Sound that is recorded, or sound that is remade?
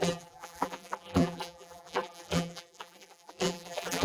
remade